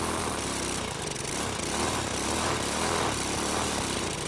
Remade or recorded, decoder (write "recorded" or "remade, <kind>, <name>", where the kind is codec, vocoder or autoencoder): recorded